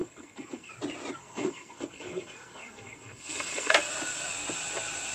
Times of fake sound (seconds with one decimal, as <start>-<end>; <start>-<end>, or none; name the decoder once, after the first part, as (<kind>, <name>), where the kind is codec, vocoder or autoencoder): 0.0-0.7 (codec, SNAC); 1.2-3.8